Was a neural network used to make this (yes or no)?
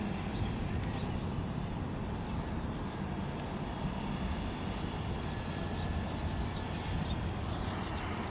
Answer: no